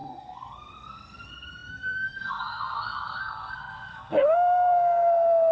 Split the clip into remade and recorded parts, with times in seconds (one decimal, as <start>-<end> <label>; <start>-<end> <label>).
0.0-5.5 remade